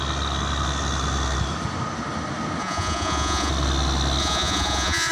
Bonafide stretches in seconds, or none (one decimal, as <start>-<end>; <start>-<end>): 0.0-2.6; 3.5-4.2